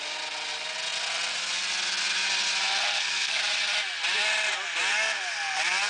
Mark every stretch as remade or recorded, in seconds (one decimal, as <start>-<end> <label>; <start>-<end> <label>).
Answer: 0.0-2.9 recorded; 2.9-3.4 remade; 3.4-5.9 recorded